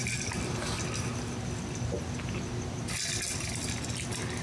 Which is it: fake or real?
real